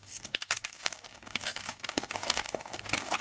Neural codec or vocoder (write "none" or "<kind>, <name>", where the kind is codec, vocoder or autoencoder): codec, DAC